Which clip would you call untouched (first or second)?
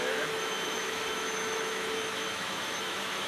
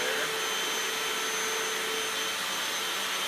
second